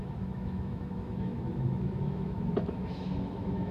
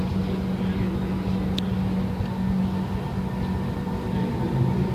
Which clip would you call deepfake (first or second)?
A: first